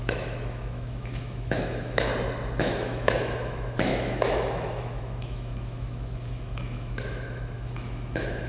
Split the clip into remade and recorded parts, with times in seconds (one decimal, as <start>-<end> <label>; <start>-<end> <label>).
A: 0.0-2.1 remade; 2.1-2.6 recorded; 2.6-8.5 remade